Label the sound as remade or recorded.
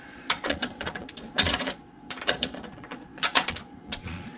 remade